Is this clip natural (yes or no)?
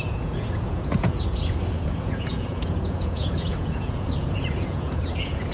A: no